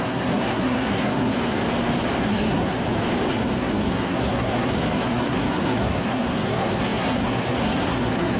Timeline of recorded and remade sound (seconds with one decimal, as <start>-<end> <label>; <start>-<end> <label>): 0.0-1.4 remade; 1.4-2.2 recorded; 2.2-2.8 remade; 2.8-3.3 recorded; 3.3-8.4 remade